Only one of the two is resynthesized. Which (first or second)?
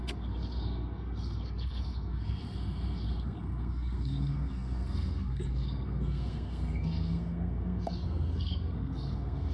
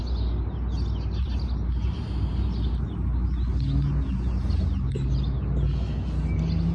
first